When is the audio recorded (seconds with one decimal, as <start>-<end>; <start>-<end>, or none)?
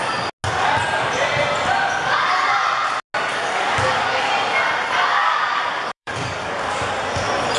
0.0-3.3; 4.3-5.1; 6.9-7.6